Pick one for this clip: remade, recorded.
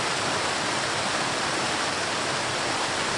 recorded